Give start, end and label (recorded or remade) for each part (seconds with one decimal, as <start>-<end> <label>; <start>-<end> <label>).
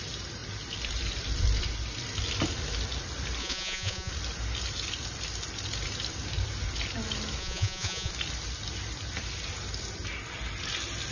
0.0-3.4 recorded; 3.4-4.1 remade; 4.1-7.4 recorded; 7.4-8.1 remade; 8.1-11.1 recorded